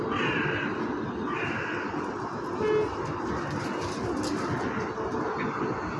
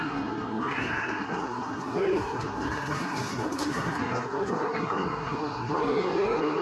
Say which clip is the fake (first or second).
second